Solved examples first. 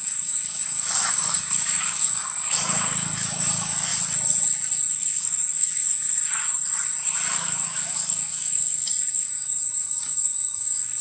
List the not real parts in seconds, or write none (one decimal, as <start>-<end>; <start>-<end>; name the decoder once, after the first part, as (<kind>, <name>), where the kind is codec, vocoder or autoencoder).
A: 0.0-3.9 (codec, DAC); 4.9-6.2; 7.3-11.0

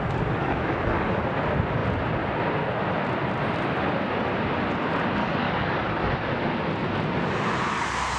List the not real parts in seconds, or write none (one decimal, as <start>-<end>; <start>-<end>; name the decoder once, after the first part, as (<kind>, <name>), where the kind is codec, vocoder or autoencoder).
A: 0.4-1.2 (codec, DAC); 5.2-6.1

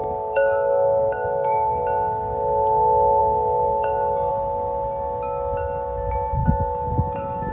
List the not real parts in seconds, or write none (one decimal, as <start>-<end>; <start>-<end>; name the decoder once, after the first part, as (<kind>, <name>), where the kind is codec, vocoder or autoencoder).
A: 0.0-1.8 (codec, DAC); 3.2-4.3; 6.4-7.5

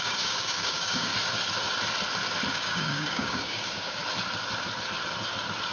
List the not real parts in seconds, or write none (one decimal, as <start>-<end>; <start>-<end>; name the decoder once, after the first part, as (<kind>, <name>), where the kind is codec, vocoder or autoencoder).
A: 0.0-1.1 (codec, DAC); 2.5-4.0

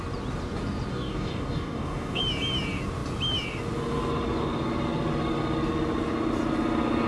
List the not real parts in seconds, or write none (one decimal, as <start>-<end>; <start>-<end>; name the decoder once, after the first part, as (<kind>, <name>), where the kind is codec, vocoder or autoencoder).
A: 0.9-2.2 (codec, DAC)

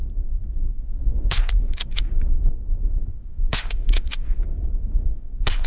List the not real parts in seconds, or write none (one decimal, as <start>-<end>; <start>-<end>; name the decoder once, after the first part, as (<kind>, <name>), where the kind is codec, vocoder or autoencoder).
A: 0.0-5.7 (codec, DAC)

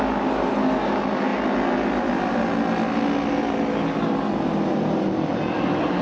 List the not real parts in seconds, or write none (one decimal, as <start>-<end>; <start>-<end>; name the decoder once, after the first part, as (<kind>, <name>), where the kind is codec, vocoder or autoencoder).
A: none

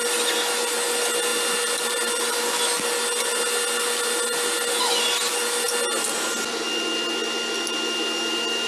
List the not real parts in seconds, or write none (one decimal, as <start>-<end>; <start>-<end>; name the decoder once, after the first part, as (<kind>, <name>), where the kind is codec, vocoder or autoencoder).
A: none